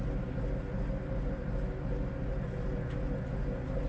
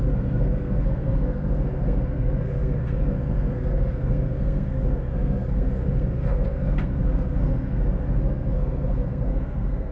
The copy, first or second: second